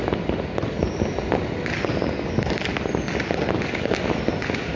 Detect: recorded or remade recorded